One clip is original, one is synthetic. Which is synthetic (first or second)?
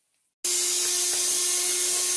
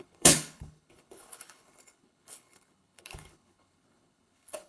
second